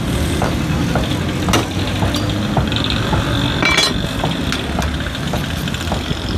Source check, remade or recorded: recorded